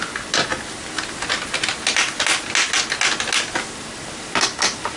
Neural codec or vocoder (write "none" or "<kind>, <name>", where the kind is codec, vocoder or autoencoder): none